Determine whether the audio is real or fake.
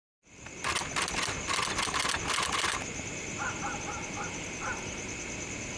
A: real